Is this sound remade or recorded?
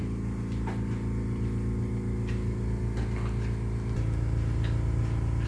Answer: recorded